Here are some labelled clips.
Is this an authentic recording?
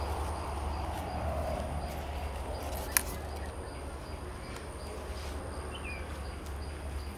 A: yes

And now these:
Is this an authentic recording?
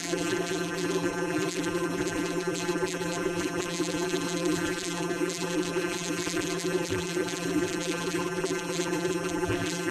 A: no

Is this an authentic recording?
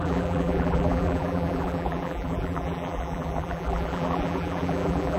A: no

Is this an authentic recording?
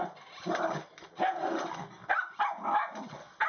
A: yes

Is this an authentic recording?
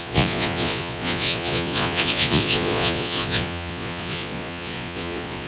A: no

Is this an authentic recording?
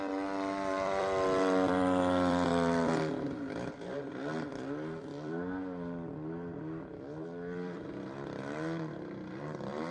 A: no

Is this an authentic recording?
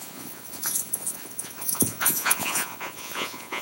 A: no